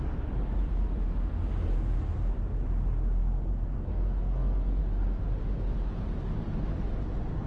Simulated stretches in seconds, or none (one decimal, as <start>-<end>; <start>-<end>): 3.2-4.8